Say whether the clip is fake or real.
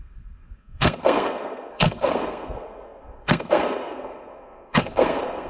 fake